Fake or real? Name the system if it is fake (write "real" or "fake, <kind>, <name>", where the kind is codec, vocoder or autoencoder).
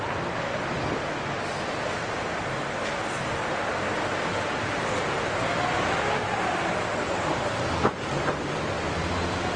real